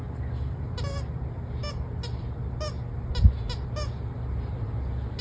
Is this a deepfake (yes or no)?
no